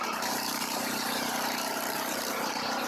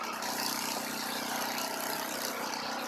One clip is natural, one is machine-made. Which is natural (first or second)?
second